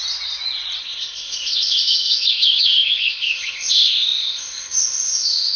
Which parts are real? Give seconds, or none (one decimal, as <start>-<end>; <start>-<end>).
0.0-0.8